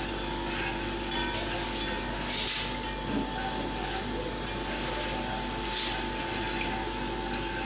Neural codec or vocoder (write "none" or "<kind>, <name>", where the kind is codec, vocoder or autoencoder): none